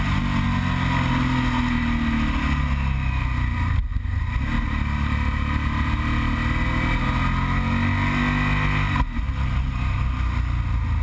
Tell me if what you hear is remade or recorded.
recorded